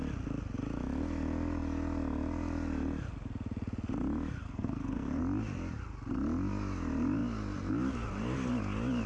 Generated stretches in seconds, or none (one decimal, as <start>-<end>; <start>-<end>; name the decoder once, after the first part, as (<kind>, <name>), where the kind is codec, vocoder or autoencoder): 4.4-5.2 (codec, SNAC)